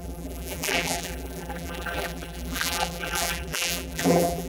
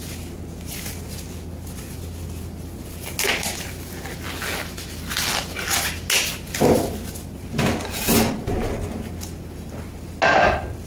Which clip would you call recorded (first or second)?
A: second